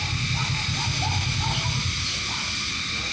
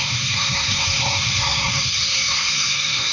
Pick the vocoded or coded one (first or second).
second